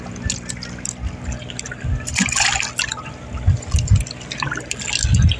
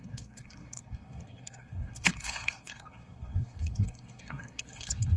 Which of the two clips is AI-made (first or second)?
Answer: second